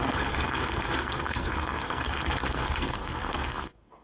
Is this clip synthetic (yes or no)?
yes